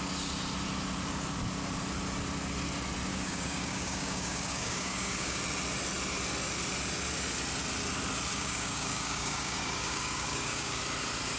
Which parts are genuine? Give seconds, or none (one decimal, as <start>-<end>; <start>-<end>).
0.0-3.1; 5.4-8.3; 10.8-11.4